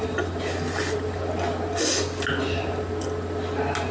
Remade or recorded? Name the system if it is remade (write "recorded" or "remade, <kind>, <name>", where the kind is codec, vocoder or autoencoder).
recorded